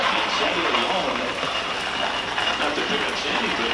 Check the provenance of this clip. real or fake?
real